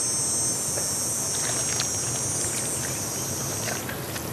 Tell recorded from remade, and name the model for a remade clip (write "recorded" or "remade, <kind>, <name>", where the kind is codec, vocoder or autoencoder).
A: recorded